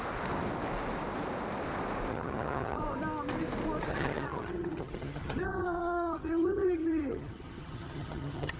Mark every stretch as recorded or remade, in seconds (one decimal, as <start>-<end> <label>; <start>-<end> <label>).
0.0-2.1 recorded; 2.1-2.8 remade; 2.8-3.9 recorded; 3.9-8.6 remade